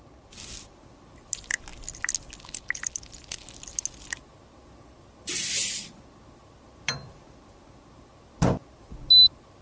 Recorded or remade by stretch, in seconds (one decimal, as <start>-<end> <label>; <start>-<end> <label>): 0.0-9.6 recorded